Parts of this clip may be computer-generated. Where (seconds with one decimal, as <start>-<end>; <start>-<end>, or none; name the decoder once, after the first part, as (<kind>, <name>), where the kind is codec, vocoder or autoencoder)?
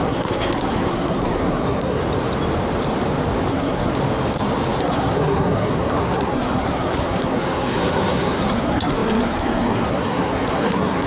0.0-2.0 (codec, SNAC); 3.5-3.9; 4.8-11.1